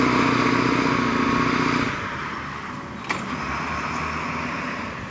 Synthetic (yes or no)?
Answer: no